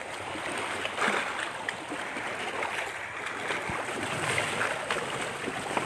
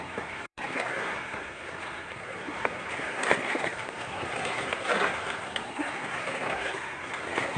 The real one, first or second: first